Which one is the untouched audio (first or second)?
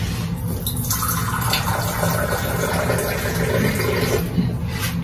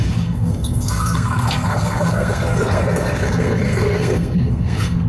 first